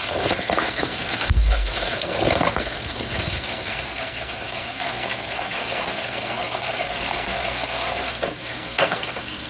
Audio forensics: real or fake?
fake